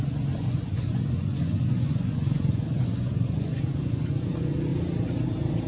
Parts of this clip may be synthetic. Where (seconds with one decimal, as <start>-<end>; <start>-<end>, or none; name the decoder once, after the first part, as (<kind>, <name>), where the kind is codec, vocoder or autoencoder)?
0.0-4.7 (vocoder, Vocos)